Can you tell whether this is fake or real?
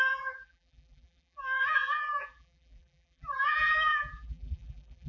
fake